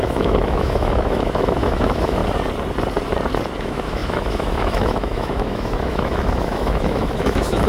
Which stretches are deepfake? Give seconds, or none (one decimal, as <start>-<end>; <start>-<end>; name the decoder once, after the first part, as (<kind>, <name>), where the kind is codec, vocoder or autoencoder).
0.0-2.2 (autoencoder, DAC-VAE); 3.6-7.7